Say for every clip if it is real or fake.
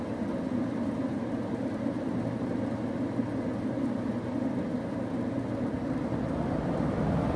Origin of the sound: real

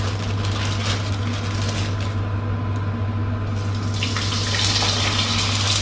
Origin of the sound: real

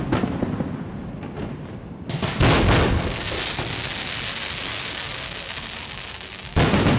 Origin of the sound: real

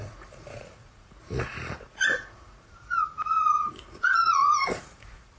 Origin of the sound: fake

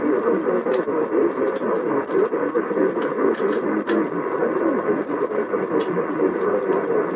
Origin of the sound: real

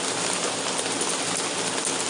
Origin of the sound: real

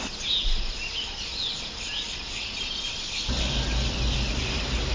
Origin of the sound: real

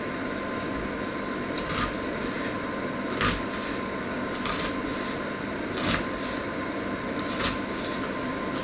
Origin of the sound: real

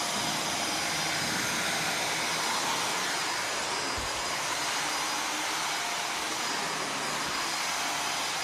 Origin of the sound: real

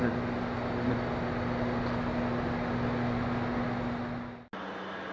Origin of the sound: real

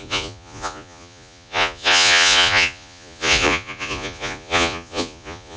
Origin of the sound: fake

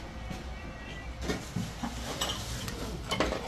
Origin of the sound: real